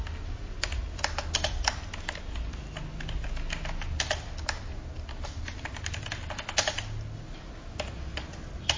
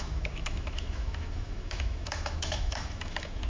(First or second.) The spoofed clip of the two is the second